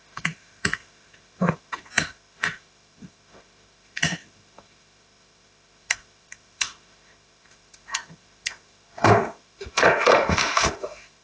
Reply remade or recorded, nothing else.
remade